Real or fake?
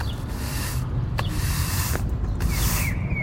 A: real